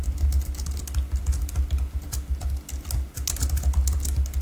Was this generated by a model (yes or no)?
no